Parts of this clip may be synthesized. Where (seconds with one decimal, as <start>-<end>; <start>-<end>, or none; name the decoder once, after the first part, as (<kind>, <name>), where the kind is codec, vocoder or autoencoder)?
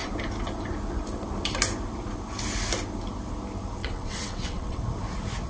3.8-4.8 (vocoder, WaveNeXt)